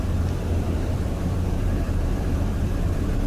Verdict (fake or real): fake